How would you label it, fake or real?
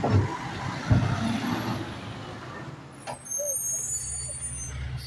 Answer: real